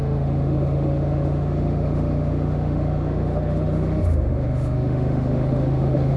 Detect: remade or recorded remade